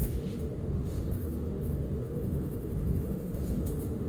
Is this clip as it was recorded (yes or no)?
no